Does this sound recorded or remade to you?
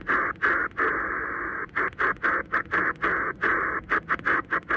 recorded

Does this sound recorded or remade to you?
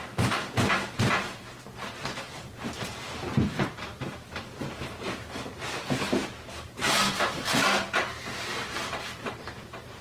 remade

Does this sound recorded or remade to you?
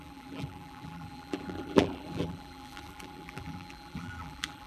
remade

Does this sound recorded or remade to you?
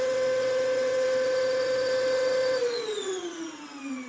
remade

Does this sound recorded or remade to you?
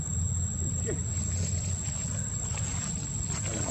recorded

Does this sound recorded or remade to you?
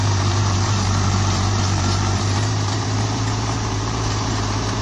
remade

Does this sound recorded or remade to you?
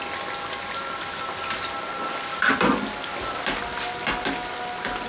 recorded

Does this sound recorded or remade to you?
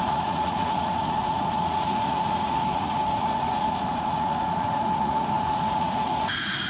remade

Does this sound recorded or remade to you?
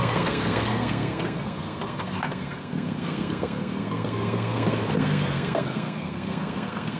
remade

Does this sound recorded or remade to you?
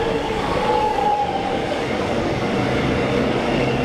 remade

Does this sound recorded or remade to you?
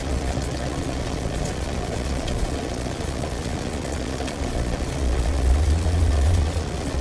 remade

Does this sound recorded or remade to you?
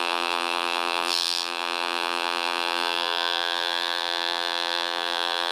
remade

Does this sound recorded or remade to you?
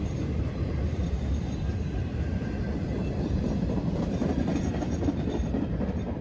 remade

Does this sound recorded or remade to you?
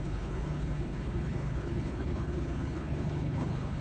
remade